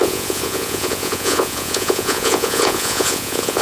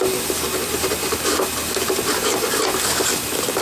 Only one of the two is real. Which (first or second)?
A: second